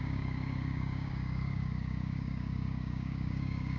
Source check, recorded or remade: remade